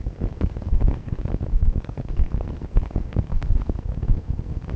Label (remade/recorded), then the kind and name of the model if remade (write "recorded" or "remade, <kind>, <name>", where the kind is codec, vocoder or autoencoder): remade, codec, SNAC